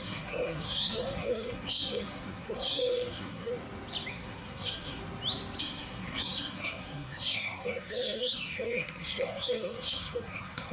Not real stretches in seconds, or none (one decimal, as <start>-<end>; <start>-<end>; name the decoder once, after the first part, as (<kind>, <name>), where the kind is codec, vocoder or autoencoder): 0.0-3.5 (codec, SNAC); 4.1-5.0; 5.6-10.7